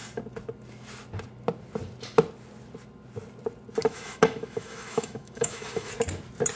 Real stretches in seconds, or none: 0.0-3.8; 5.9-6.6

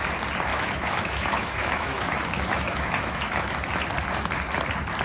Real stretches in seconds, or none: 0.0-0.5; 3.5-5.0

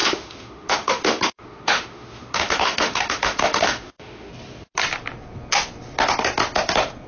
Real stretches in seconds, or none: 4.3-7.1

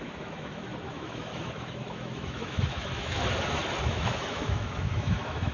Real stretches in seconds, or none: 3.2-3.8

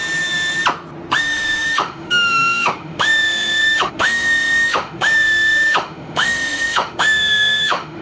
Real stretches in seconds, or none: 0.0-1.2

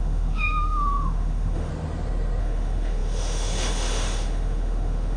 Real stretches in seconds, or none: 1.7-2.4

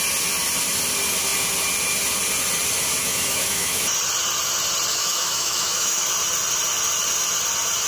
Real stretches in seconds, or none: 0.0-3.0; 3.8-4.9; 6.0-7.9